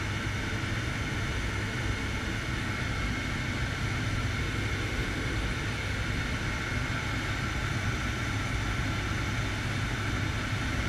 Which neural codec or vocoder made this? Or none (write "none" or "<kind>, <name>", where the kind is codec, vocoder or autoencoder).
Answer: none